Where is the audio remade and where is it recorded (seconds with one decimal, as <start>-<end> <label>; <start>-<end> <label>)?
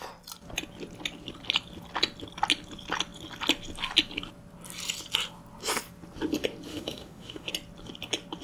0.0-6.7 recorded; 6.7-7.5 remade; 7.5-8.4 recorded